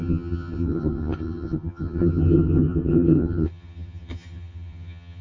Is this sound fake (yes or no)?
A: yes